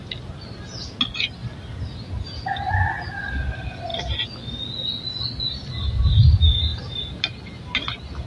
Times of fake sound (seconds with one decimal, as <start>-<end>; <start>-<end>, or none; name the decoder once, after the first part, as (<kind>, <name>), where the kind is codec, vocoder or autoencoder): none